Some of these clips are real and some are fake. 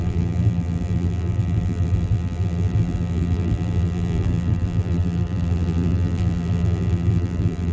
fake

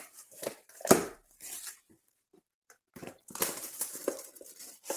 fake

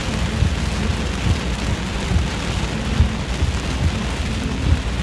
real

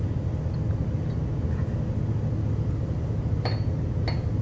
real